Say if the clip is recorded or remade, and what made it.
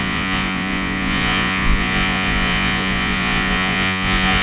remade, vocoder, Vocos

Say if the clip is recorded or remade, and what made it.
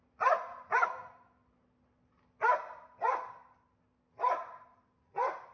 recorded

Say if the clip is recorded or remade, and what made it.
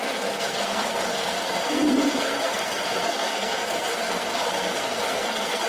remade, codec, SNAC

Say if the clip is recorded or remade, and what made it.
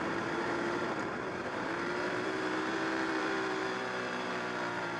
remade, vocoder, BigVGAN v2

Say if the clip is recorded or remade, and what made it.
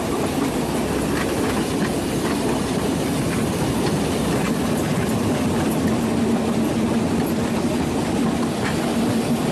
recorded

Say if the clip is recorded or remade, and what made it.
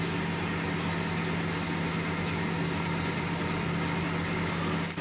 recorded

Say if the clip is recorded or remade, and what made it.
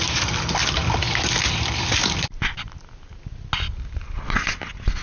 recorded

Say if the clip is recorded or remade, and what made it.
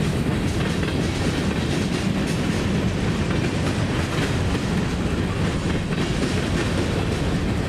recorded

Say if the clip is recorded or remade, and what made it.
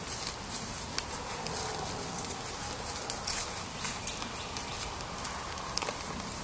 recorded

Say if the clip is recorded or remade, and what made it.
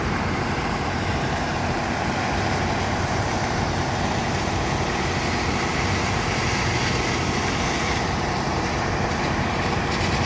remade, vocoder, BigVGAN v2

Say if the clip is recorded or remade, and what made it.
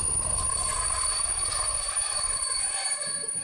remade, vocoder, BigVGAN v2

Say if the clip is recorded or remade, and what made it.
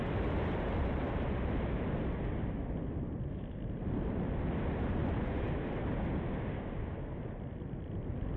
recorded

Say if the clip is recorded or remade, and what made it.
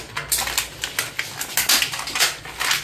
recorded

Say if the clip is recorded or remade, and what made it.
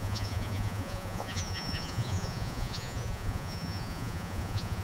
remade, vocoder, Vocos